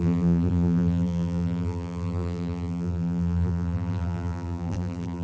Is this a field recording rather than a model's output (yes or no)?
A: no